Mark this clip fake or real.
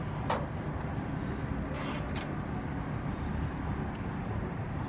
real